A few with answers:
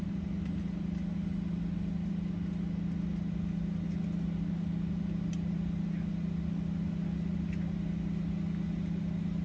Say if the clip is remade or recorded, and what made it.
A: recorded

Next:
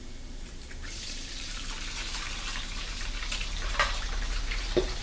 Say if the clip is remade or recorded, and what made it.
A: remade, vocoder, BigVGAN v2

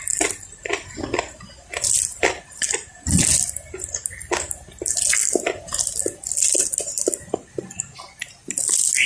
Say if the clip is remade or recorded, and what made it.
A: recorded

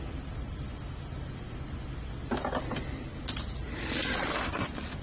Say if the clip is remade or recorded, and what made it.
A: remade, vocoder, BigVGAN v2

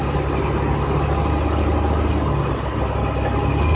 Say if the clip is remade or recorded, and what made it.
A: recorded